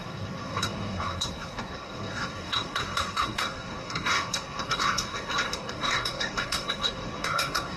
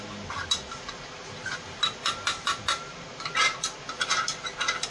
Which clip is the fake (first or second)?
first